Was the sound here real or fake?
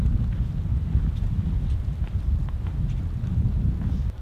real